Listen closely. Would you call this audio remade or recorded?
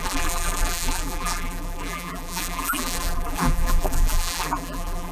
remade